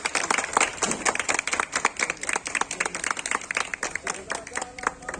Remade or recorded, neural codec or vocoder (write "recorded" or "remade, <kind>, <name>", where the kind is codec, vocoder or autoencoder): recorded